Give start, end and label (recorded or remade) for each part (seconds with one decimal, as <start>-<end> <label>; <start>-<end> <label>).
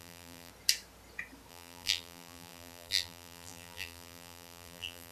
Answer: 0.0-0.5 remade; 0.5-1.5 recorded; 1.5-5.1 remade